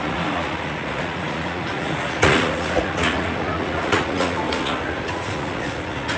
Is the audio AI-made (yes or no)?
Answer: yes